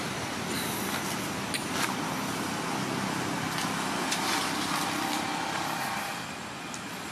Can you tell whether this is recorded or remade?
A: recorded